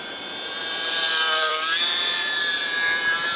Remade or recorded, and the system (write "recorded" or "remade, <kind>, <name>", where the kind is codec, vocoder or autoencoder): remade, vocoder, BigVGAN v2